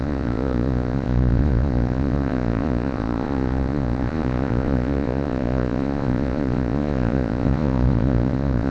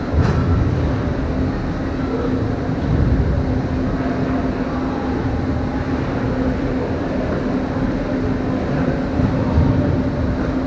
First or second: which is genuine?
second